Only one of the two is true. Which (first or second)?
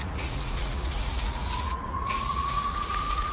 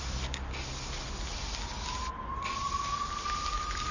second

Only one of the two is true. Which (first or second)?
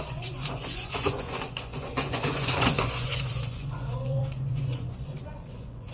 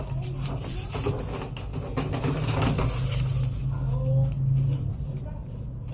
second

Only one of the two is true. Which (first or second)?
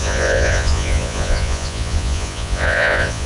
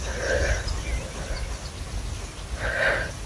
second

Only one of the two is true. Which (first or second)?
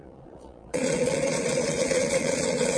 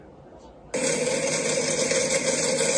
second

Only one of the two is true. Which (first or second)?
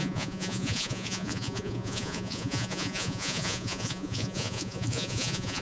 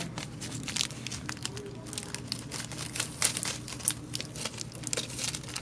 second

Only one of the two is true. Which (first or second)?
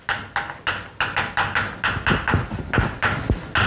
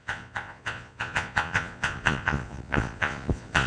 first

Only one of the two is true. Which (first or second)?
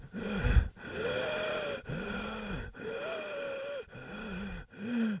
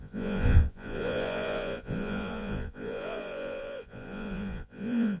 first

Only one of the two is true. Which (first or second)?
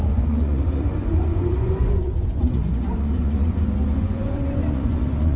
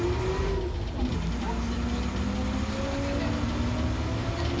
second